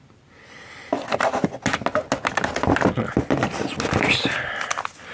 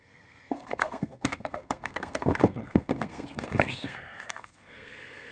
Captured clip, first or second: first